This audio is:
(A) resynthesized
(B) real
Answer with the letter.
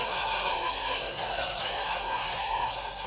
A